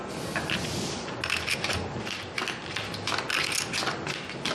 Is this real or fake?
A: real